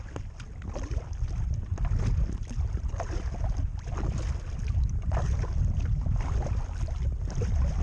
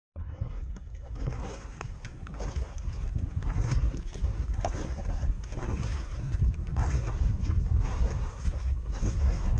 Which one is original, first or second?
first